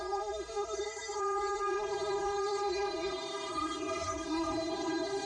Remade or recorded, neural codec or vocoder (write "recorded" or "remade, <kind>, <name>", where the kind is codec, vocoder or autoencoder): remade, codec, SNAC